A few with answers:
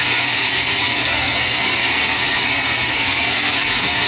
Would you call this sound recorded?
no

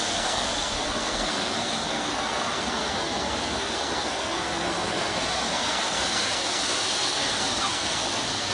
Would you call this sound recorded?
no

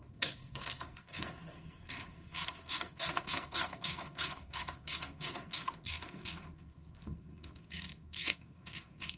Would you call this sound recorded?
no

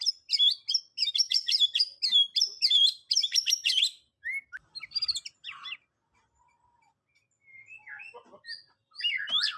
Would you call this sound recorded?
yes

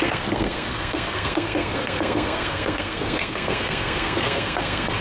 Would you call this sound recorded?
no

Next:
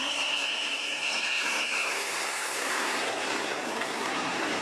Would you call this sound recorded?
no